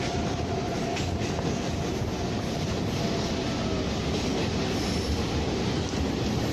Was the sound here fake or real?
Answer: real